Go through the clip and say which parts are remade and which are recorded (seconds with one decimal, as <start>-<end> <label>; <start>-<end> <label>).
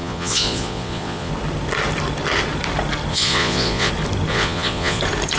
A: 0.0-1.3 remade; 1.3-3.1 recorded; 3.1-3.9 remade; 3.9-4.3 recorded; 4.3-5.0 remade; 5.0-5.4 recorded